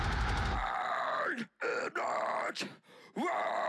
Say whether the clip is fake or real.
real